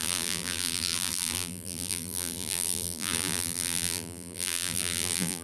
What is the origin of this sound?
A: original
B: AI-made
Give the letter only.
B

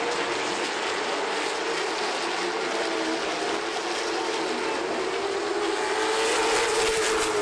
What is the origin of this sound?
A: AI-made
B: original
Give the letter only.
B